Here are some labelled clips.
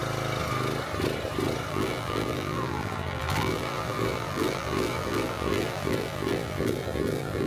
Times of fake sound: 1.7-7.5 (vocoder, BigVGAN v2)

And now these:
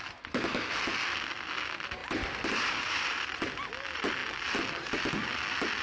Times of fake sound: 2.0-3.5 (vocoder, BigVGAN v2)

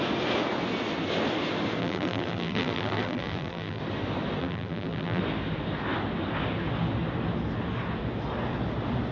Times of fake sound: 1.8-3.8 (vocoder, BigVGAN v2); 4.4-5.2

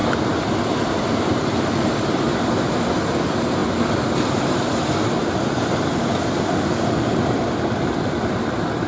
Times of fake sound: 0.0-2.5 (vocoder, BigVGAN v2); 3.6-6.6

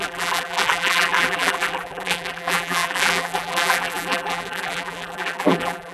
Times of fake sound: 0.0-5.9 (vocoder, BigVGAN v2)

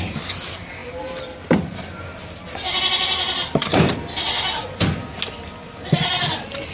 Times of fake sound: 0.8-4.8 (vocoder, BigVGAN v2)

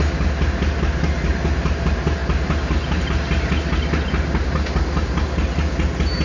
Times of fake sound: none